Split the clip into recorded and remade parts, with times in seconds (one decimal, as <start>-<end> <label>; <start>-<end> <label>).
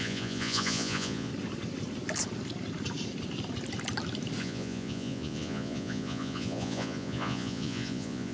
0.0-1.3 remade; 1.3-4.4 recorded; 4.4-8.3 remade